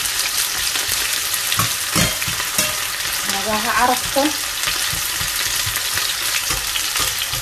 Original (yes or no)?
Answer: yes